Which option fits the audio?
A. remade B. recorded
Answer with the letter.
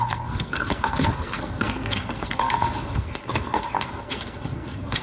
A